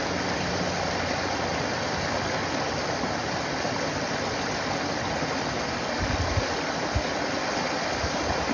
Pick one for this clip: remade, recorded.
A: recorded